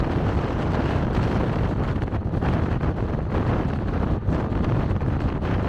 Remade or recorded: remade